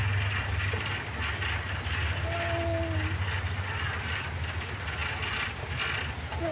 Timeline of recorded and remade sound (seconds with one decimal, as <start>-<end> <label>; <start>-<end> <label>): 0.0-6.5 recorded